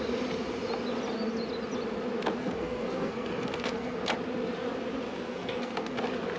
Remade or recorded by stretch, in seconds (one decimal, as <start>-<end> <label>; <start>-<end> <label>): 0.0-2.4 recorded; 2.4-4.0 remade; 4.0-5.1 recorded; 5.1-6.0 remade; 6.0-6.4 recorded